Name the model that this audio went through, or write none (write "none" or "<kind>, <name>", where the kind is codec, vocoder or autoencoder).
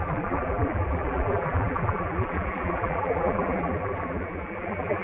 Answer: vocoder, BigVGAN v2